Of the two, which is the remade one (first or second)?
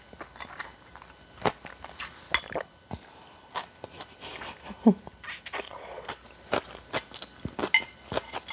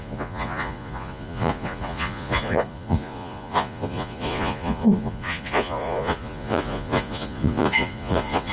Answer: second